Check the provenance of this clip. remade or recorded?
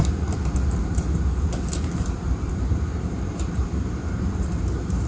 remade